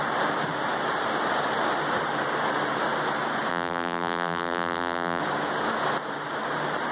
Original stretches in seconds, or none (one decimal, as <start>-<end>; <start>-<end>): 0.0-3.5; 5.2-6.9